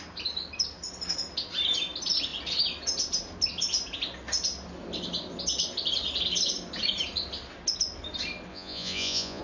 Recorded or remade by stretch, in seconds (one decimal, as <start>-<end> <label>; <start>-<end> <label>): 0.0-8.5 recorded; 8.5-9.4 remade